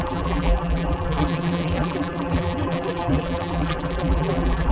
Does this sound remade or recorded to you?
remade